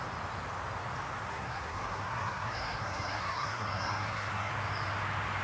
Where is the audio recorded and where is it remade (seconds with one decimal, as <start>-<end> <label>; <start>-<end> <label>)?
0.0-1.3 recorded; 1.3-4.5 remade; 4.5-5.4 recorded